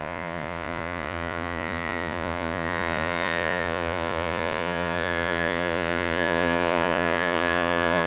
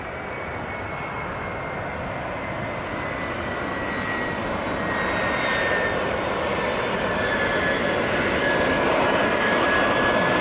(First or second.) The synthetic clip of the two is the first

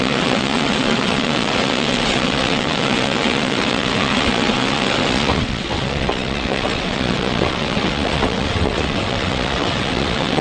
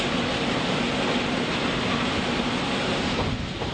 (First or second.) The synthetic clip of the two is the first